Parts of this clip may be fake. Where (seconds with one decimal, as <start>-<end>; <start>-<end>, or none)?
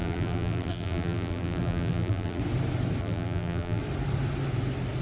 0.0-2.4; 3.0-3.8